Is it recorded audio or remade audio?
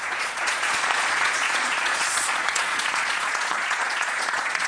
remade